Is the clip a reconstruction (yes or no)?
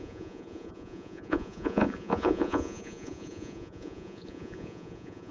yes